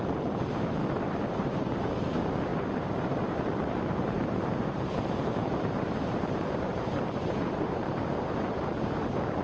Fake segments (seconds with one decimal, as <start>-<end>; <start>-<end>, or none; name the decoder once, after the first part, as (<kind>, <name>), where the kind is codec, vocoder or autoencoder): 0.0-0.8 (vocoder, BigVGAN v2); 1.3-9.4